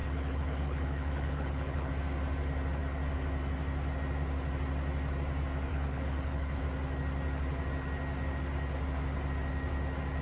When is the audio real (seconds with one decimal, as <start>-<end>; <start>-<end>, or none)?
1.9-5.7; 6.6-10.2